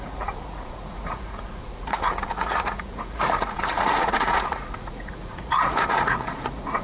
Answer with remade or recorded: remade